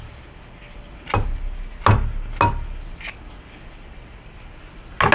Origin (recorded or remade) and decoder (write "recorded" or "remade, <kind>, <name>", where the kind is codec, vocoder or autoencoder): recorded